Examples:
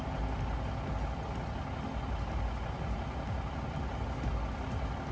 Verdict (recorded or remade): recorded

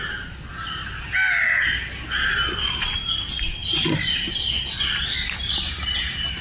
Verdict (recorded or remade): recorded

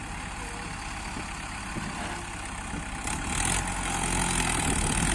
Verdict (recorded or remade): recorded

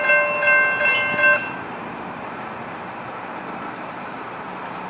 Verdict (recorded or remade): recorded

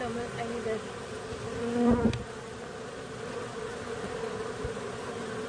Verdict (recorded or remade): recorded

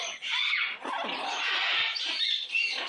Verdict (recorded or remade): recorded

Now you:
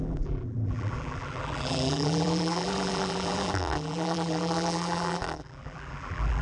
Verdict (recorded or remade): remade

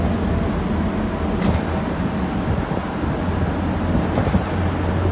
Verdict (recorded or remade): recorded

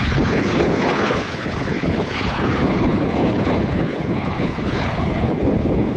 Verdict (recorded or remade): remade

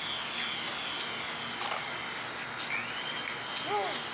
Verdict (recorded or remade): recorded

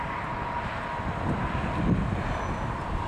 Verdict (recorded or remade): recorded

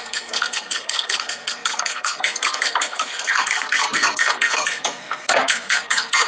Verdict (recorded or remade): remade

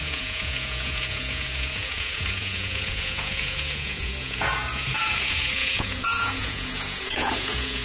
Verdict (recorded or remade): remade